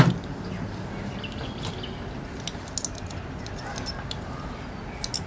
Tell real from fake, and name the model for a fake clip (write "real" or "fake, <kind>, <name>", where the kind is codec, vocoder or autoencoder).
real